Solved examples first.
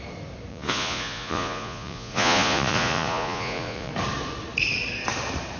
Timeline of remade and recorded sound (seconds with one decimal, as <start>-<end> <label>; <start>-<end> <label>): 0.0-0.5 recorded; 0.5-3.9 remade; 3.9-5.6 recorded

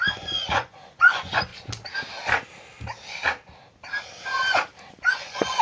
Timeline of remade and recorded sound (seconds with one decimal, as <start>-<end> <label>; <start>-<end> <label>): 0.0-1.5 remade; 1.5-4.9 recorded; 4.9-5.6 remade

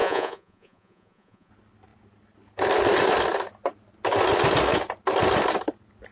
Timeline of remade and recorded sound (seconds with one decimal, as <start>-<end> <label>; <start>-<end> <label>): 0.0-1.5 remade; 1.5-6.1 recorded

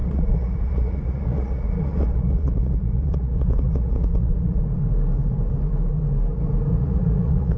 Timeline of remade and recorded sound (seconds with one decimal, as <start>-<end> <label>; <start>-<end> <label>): 0.0-4.6 remade; 4.6-6.7 recorded; 6.7-7.6 remade

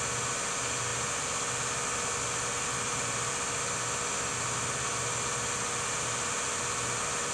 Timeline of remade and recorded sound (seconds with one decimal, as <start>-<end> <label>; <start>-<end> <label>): 0.0-7.3 recorded

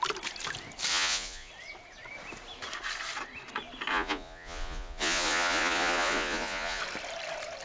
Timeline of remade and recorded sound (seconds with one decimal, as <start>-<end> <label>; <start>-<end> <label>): 0.0-0.9 recorded; 0.9-1.5 remade; 1.5-3.9 recorded; 3.9-6.8 remade; 6.8-7.6 recorded

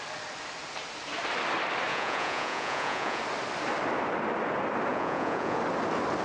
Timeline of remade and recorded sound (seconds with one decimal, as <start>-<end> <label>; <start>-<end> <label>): 0.0-1.9 recorded; 1.9-3.2 remade; 3.2-4.9 recorded; 4.9-5.6 remade; 5.6-6.2 recorded